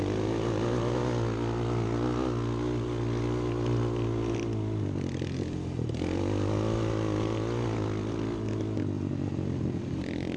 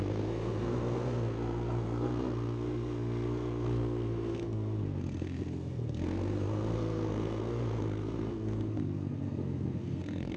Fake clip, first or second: second